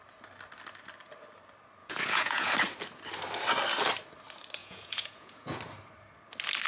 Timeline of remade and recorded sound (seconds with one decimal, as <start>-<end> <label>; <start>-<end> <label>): 0.0-1.8 recorded; 1.8-2.5 remade; 2.5-4.6 recorded; 4.6-5.6 remade; 5.6-6.7 recorded